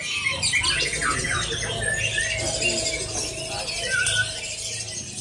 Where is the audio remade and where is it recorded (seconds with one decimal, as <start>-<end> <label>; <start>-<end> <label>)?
0.0-5.2 recorded